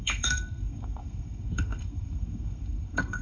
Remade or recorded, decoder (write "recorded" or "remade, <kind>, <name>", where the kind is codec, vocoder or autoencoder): remade, codec, SNAC